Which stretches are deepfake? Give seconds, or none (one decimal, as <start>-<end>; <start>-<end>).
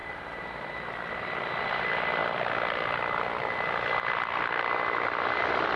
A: none